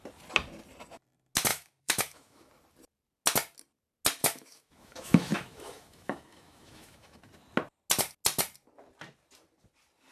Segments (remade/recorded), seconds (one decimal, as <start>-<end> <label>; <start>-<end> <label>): 0.0-1.5 recorded; 1.5-2.5 remade; 2.5-4.2 recorded; 4.2-7.3 remade; 7.3-10.1 recorded